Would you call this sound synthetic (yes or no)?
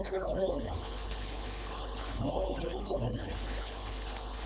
yes